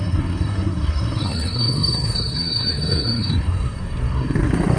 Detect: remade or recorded remade